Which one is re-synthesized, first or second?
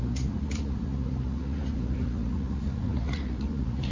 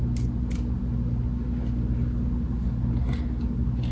first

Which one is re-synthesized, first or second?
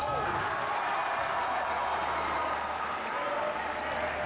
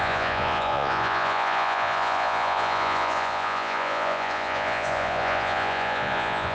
second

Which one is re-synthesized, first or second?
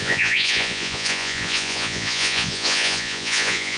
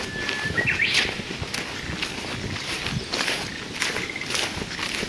first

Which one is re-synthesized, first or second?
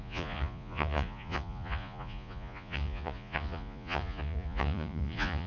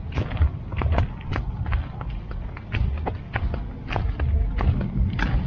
first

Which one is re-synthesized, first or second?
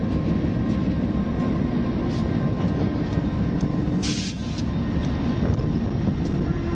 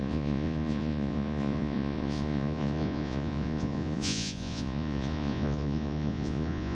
second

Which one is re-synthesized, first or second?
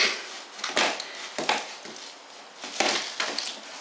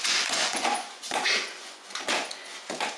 second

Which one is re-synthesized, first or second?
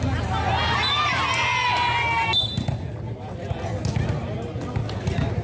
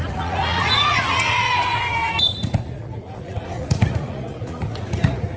second